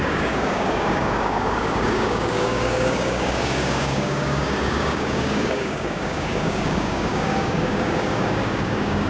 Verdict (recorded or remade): remade